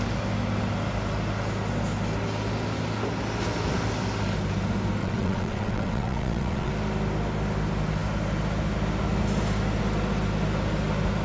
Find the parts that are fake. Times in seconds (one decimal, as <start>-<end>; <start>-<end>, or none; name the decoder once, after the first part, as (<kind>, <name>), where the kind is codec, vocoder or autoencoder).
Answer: 5.0-6.7 (vocoder, WaveNeXt)